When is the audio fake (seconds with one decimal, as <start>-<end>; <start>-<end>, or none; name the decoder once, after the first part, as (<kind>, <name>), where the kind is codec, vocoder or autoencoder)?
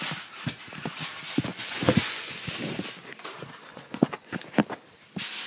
1.5-2.5 (vocoder, Vocos); 3.7-4.3